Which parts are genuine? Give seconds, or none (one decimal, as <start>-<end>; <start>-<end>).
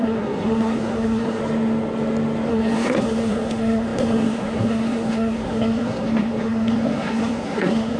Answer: 1.4-2.5